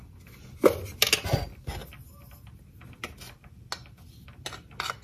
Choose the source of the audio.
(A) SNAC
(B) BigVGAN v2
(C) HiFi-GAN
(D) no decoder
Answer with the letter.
D